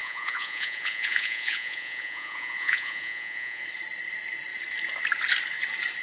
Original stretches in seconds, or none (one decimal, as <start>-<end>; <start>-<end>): 3.6-6.0